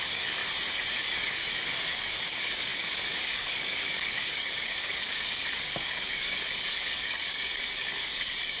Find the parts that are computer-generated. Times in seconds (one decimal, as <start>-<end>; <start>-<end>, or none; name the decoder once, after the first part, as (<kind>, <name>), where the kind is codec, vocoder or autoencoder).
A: 0.0-0.4 (codec, DAC); 0.9-8.6